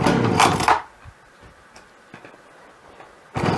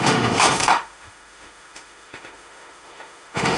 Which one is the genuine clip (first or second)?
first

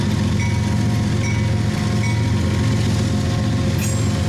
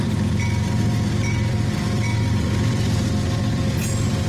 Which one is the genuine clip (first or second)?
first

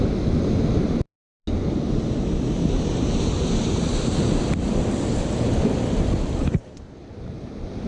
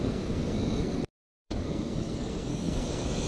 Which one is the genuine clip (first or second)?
first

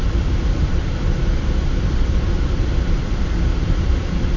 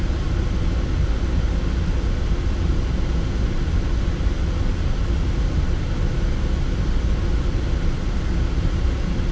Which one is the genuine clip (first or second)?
second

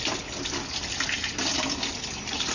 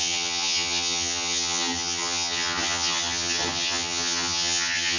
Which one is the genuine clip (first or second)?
first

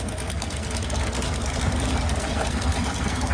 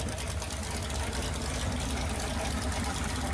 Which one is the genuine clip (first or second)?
second